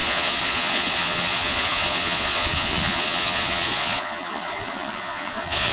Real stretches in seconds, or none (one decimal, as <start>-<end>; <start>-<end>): none